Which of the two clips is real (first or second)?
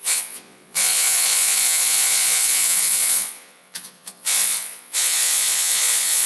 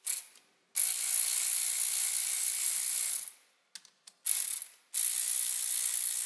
second